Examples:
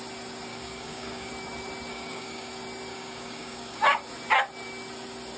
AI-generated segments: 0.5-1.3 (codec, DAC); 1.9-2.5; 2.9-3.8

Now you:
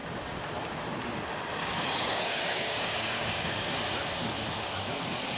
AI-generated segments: 1.6-3.8 (codec, DAC)

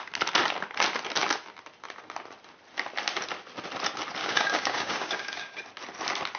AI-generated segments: 4.2-5.6 (codec, DAC)

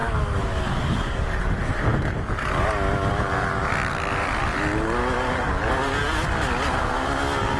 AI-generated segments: 0.0-1.4 (codec, DAC)

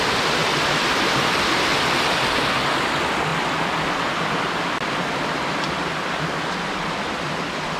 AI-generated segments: none

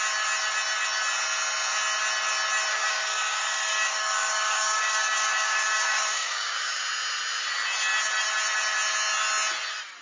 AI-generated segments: 2.7-6.8 (codec, DAC)